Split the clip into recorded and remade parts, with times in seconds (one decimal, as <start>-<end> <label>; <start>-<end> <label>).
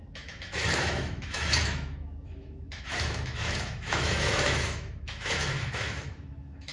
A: 0.0-6.7 remade